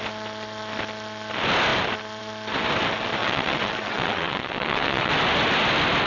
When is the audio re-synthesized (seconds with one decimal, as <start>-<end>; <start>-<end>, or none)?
3.2-5.1